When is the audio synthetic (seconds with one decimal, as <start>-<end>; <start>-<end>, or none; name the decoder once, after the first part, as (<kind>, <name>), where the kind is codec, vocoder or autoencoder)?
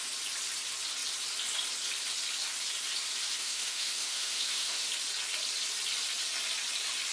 3.4-4.9 (autoencoder, DAC-VAE)